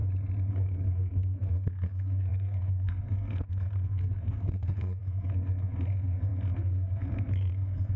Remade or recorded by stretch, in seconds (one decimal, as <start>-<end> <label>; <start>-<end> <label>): 0.0-0.5 recorded; 0.5-8.0 remade